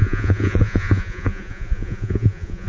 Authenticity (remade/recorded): remade